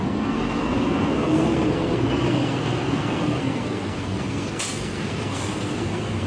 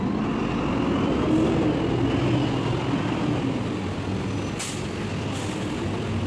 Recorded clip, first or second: second